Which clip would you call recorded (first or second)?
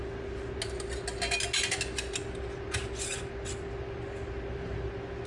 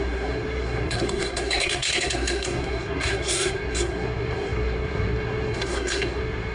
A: first